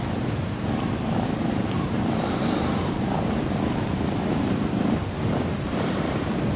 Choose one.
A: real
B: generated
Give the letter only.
B